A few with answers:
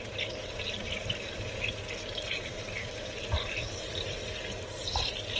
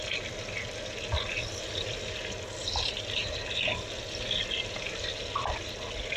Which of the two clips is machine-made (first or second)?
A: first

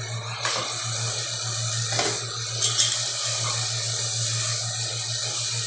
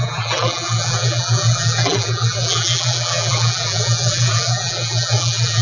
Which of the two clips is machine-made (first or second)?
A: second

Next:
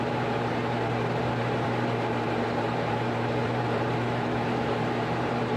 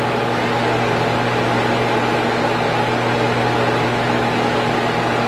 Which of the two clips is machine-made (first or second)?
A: first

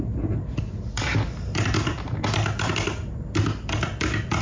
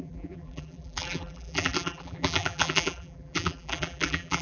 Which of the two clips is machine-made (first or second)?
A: second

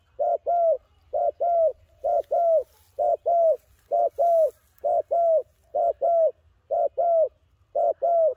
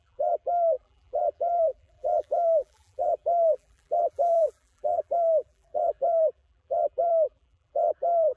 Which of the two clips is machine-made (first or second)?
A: second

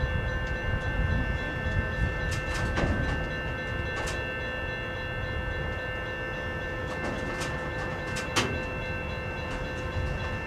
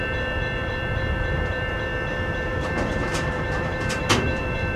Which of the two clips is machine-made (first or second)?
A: second